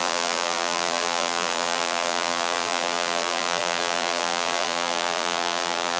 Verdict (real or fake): fake